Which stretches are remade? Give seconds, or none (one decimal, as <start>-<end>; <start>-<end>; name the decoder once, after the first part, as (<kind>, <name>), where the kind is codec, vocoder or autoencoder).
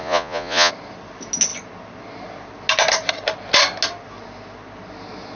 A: 0.0-0.7 (vocoder, Vocos)